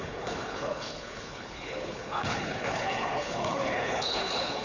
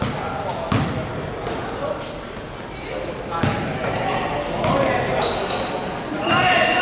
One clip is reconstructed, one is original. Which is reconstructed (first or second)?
first